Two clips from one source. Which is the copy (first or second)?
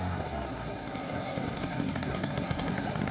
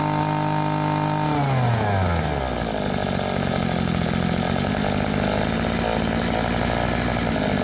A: first